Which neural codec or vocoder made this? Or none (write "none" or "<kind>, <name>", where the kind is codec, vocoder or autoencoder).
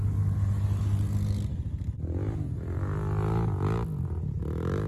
none